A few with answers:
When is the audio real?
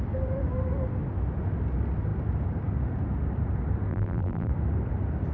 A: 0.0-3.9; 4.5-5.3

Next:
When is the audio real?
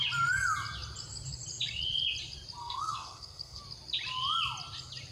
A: 0.0-2.6; 3.6-5.1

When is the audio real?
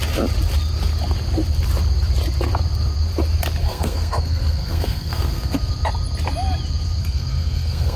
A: 0.0-3.6; 5.7-7.0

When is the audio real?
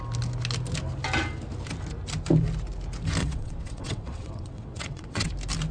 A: 0.0-3.2; 5.3-5.7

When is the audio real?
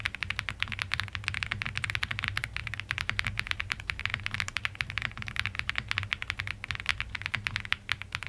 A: 0.0-2.6; 5.7-8.3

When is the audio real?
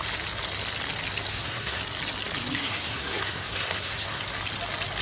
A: 0.0-1.3; 1.8-2.6; 4.2-5.0